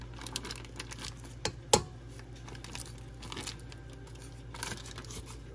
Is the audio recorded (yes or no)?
yes